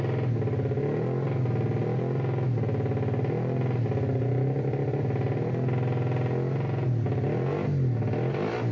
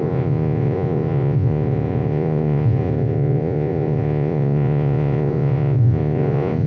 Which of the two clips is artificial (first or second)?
second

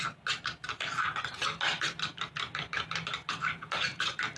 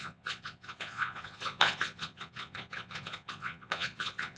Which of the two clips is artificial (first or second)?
second